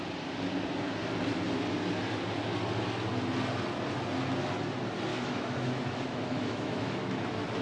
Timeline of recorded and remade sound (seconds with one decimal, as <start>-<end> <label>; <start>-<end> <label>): 0.0-5.1 recorded; 5.1-7.6 remade